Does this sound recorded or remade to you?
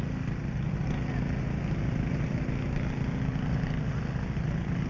recorded